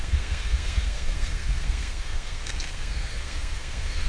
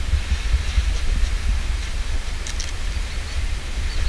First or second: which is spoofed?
first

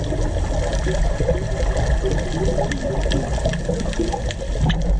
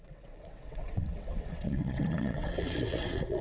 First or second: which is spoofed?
second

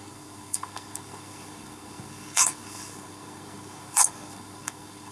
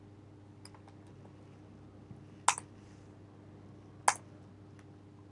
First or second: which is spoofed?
first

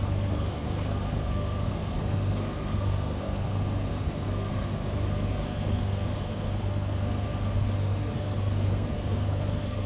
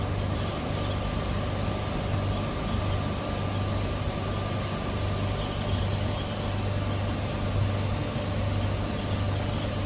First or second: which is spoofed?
first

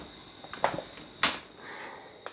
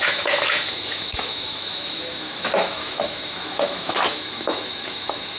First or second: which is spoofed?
second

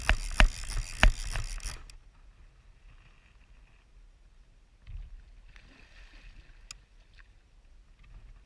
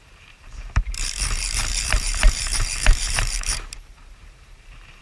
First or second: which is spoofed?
second